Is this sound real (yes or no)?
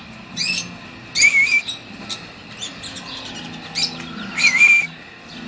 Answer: yes